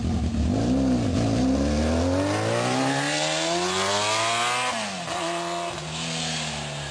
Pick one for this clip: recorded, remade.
recorded